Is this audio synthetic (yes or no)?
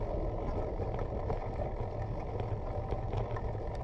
no